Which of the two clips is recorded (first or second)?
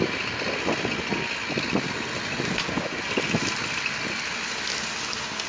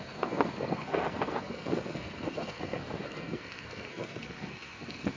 first